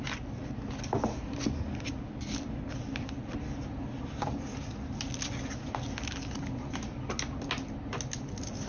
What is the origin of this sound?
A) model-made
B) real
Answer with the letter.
B